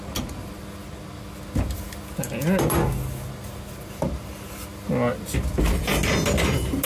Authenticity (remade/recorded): recorded